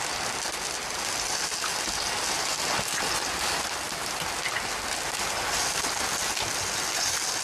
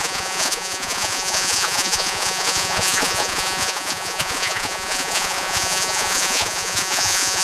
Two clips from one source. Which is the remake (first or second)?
second